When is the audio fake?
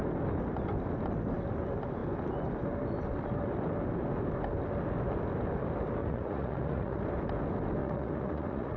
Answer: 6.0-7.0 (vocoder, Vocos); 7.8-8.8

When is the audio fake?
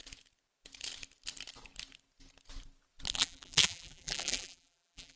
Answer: 3.1-5.2 (vocoder, BigVGAN v2)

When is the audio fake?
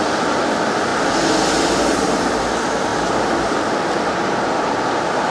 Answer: 0.9-2.4 (vocoder, BigVGAN v2); 2.9-3.7